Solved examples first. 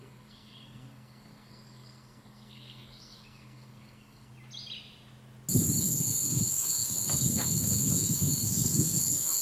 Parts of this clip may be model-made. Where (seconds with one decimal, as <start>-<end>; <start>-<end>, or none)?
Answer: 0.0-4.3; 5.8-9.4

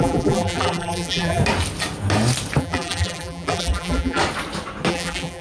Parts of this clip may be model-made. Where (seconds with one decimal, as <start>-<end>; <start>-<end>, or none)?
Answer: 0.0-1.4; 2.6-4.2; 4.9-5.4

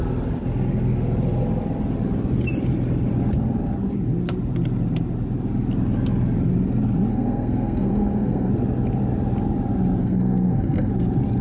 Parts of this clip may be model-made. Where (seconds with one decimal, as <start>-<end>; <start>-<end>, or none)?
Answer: 7.1-8.5; 10.0-10.9

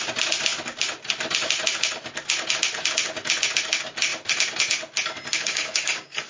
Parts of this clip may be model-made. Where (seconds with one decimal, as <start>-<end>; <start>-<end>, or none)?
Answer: 5.4-6.3

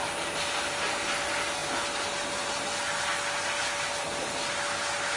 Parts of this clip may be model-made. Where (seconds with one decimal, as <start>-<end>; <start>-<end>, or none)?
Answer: none

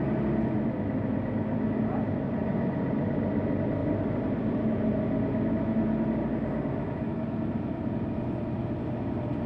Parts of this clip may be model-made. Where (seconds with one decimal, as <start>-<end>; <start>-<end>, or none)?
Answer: 2.4-3.0; 3.8-5.0